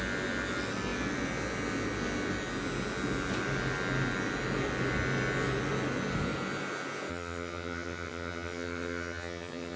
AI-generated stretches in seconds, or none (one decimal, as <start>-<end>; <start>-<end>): 7.1-9.8